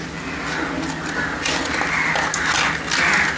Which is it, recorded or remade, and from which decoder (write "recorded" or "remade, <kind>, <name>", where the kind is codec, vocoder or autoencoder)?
recorded